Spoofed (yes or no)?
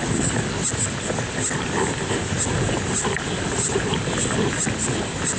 no